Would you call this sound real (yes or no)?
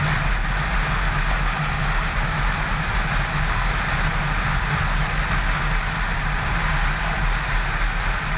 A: yes